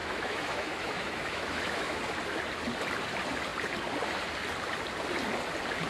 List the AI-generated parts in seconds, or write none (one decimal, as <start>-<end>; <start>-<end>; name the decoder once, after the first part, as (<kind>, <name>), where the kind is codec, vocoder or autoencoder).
0.0-2.0 (autoencoder, DAC-VAE)